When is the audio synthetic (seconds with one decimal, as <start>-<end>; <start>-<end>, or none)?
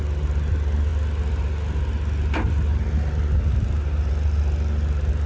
none